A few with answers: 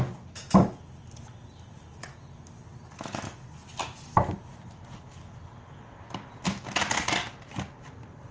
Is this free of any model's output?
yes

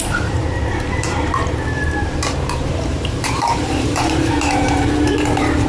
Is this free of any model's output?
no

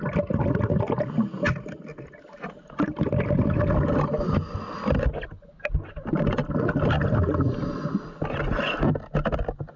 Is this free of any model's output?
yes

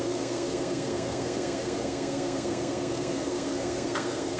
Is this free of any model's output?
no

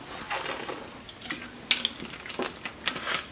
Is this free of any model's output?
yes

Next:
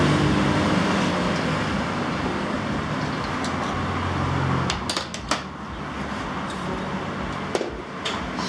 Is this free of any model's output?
yes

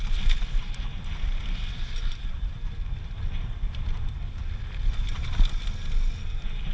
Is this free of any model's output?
yes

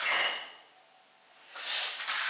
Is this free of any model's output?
yes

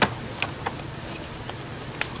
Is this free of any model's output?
yes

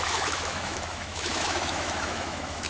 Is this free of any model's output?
no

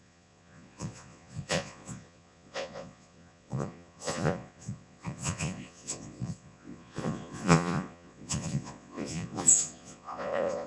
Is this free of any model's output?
no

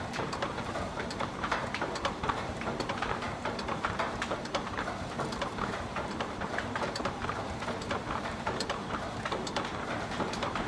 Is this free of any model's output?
no